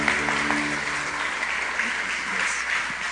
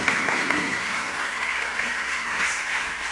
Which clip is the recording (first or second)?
first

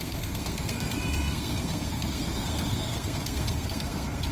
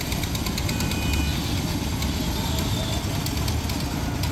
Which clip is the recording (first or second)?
second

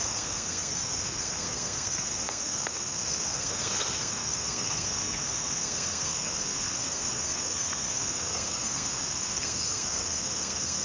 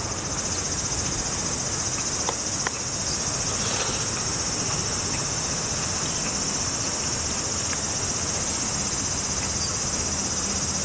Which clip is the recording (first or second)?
second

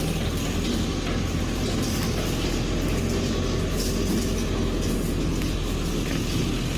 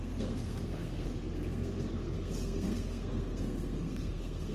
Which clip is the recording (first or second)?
first